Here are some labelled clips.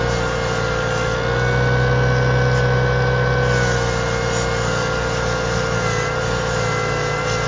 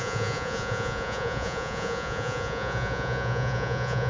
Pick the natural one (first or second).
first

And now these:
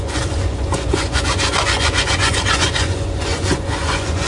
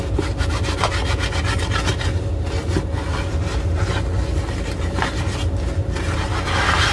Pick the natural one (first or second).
second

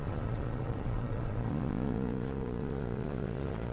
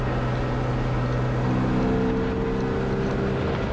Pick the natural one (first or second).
second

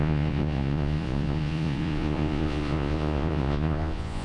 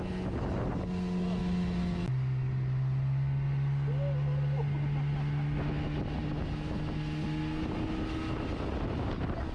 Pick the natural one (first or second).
second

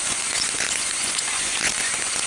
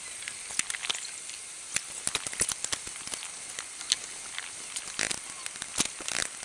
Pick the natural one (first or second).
second